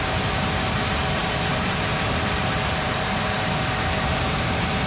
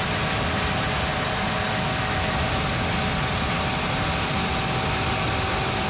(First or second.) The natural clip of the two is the second